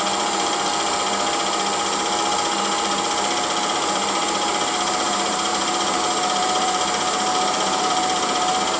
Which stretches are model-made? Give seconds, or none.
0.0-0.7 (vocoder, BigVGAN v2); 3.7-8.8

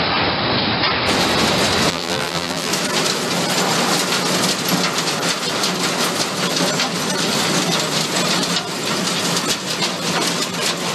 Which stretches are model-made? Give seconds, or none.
1.9-2.7 (vocoder, BigVGAN v2)

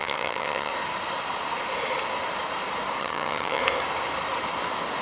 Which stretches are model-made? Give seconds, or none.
0.0-0.7 (vocoder, HiFi-GAN); 3.0-3.6